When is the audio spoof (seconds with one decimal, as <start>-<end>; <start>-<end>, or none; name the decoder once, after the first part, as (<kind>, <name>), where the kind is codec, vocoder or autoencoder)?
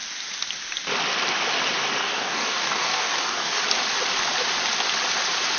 2.0-3.6 (codec, DAC)